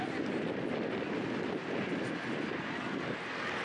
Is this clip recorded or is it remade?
recorded